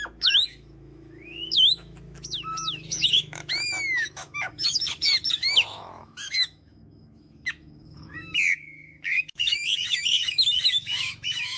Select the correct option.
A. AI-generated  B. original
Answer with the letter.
A